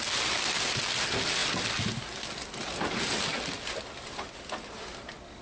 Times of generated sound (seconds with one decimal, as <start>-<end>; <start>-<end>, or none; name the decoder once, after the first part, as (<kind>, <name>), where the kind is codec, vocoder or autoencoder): none